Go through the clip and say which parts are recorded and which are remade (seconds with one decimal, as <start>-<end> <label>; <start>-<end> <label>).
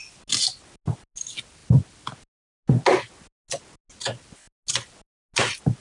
0.0-5.8 recorded